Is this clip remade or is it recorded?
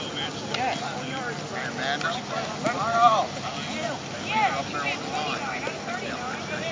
recorded